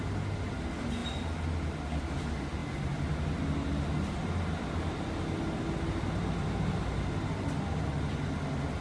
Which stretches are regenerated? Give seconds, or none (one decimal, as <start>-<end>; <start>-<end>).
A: none